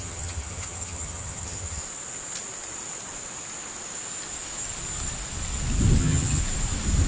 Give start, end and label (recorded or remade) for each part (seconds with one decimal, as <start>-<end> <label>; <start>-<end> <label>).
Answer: 0.0-1.8 remade; 1.8-6.0 recorded; 6.0-6.4 remade; 6.4-7.1 recorded